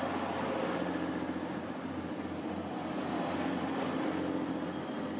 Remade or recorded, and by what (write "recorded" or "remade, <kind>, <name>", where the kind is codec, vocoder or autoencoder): recorded